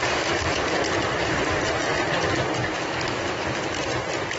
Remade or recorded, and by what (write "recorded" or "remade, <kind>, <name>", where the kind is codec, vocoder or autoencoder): recorded